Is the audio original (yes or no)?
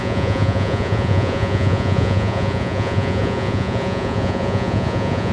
no